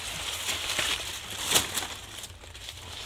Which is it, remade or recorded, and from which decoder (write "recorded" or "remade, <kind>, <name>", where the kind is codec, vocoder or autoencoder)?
recorded